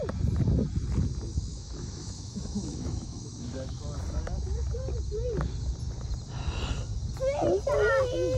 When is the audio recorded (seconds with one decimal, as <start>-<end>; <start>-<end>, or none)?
0.0-1.5; 3.8-8.4